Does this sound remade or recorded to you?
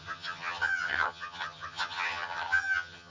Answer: remade